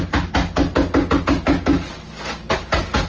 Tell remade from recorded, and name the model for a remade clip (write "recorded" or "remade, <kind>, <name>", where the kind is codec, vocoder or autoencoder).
recorded